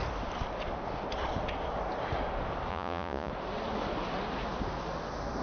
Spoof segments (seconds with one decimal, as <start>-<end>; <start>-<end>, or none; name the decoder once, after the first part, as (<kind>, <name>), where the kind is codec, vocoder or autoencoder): 2.7-3.3 (vocoder, Vocos)